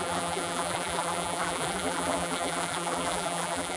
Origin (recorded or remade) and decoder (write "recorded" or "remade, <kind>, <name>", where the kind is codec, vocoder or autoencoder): remade, vocoder, BigVGAN v2